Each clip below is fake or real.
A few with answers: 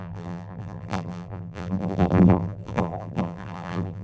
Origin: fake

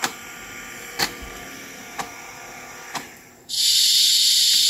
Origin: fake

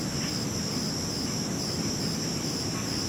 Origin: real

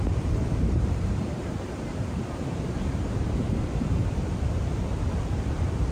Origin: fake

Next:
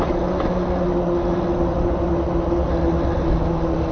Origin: real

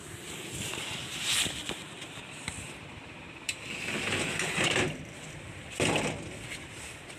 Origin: fake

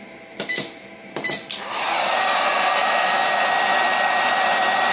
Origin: fake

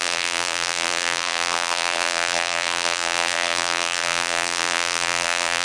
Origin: fake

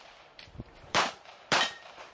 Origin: fake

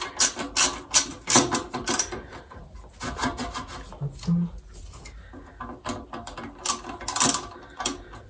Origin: real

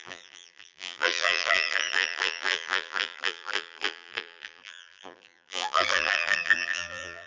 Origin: fake